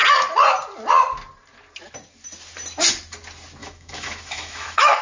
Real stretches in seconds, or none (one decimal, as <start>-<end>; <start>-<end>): 0.0-3.6